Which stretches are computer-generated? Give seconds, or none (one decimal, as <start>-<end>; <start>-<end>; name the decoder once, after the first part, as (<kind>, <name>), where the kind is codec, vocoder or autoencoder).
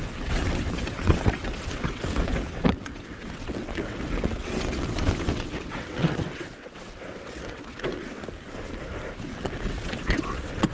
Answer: 0.0-8.2 (vocoder, WaveNeXt); 9.2-10.7